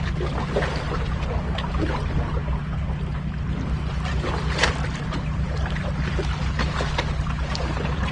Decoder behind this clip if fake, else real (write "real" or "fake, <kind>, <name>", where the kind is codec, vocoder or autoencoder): real